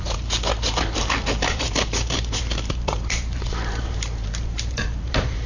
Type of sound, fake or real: fake